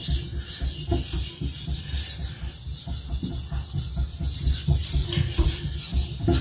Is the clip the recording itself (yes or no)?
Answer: yes